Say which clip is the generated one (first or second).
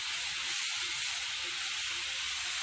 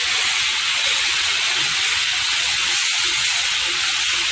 second